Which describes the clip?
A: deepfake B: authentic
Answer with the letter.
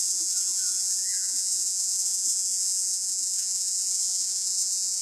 A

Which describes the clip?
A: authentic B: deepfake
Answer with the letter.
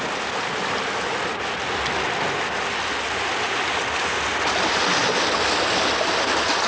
A